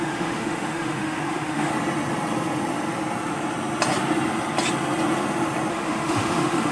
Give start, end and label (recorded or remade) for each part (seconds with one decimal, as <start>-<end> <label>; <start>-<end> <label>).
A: 0.0-1.7 remade; 1.7-5.7 recorded; 5.7-6.7 remade